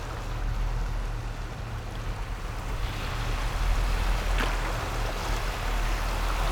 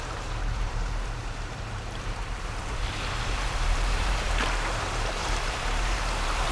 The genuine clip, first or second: first